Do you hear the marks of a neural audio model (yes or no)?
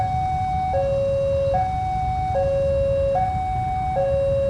no